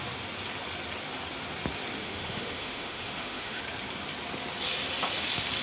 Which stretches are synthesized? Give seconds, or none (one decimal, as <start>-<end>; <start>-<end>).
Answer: 2.0-3.6